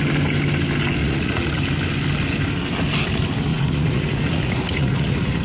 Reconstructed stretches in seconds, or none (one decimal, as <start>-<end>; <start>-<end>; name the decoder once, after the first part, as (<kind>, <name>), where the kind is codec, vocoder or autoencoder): 1.0-1.6 (vocoder, Vocos); 3.5-5.4